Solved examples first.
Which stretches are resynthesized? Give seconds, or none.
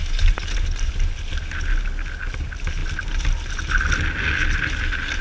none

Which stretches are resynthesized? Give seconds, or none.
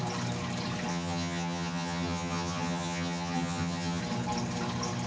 0.9-4.0 (vocoder, HiFi-GAN)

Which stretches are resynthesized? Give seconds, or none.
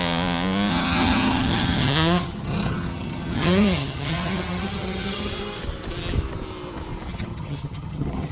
0.7-5.3 (vocoder, HiFi-GAN); 7.1-8.3